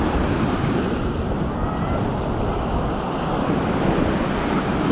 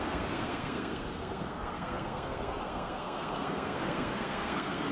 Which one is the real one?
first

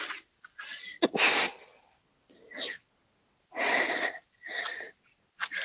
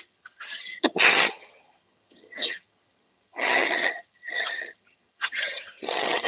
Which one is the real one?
first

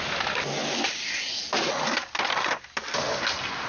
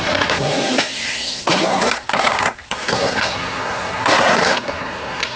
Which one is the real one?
first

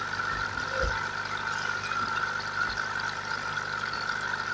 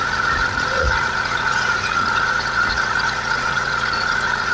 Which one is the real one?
first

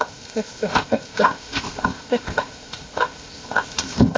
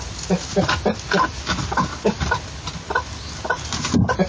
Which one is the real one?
second